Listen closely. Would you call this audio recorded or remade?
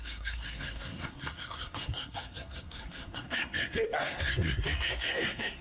remade